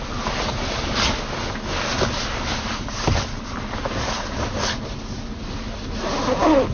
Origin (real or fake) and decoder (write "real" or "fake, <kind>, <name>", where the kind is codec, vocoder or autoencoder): real